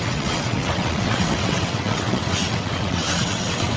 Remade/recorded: remade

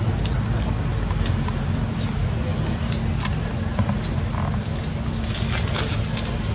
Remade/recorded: recorded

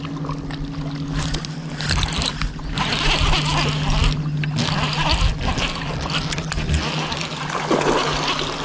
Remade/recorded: recorded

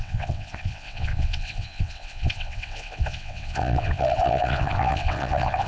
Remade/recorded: remade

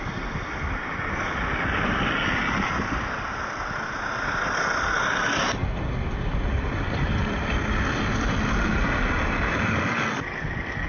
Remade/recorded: recorded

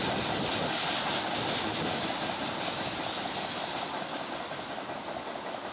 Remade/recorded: recorded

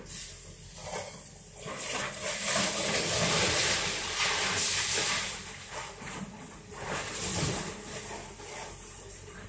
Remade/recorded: recorded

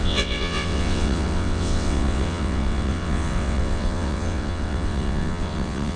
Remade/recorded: remade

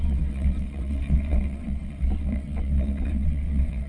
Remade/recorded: remade